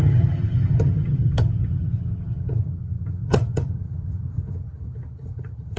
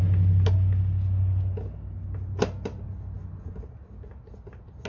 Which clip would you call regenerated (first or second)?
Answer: first